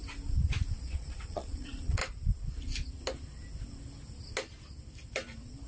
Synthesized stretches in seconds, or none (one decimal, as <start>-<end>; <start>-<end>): 0.8-2.0